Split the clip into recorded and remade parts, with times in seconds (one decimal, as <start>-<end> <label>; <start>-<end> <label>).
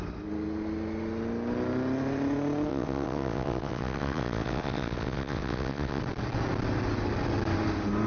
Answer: 0.0-2.7 recorded; 2.7-6.0 remade; 6.0-8.1 recorded